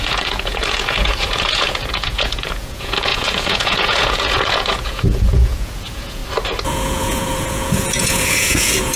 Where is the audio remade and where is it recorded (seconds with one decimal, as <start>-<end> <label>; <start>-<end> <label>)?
0.0-6.2 remade; 6.2-6.7 recorded; 6.7-9.0 remade